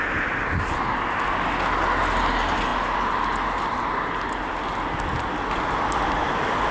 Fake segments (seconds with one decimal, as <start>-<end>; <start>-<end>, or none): none